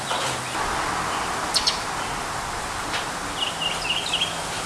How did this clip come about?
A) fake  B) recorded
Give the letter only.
B